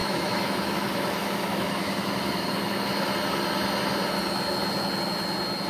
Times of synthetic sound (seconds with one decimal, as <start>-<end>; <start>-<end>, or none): 0.0-3.1